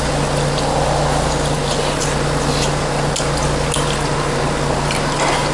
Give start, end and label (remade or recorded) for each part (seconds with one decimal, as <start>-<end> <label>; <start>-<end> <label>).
0.0-5.5 recorded